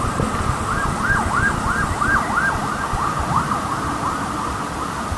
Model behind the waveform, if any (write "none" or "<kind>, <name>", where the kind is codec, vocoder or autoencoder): none